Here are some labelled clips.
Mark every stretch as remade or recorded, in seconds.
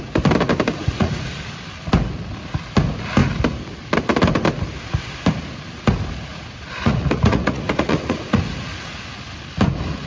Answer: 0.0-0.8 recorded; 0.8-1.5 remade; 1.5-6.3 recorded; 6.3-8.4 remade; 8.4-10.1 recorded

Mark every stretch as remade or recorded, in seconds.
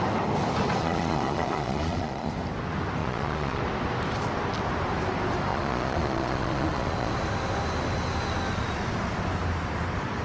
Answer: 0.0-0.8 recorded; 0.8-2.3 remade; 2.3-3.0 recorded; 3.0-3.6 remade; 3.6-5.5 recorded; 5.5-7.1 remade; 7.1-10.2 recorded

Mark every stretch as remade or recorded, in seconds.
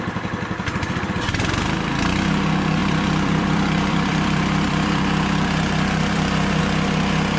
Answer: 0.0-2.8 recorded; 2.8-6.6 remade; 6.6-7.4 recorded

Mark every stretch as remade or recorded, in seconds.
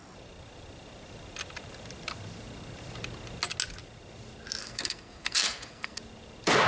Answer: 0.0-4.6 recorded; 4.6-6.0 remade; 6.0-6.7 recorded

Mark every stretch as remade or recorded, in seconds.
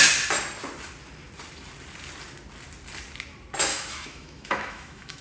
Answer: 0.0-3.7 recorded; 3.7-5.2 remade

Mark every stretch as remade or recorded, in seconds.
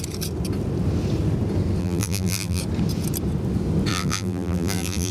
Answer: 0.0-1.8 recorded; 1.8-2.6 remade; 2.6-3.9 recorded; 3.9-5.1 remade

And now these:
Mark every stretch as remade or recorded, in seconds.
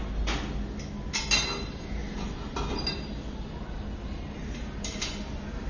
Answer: 0.0-5.7 recorded